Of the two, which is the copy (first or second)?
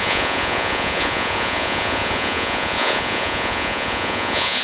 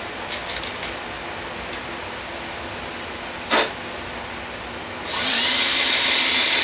first